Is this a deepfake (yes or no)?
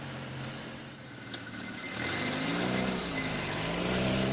yes